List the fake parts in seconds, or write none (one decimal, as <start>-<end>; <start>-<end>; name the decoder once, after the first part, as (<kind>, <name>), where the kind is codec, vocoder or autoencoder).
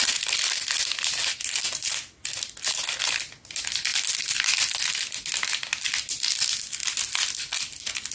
none